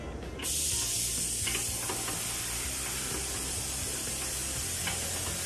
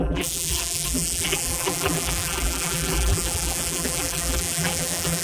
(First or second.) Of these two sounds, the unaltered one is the first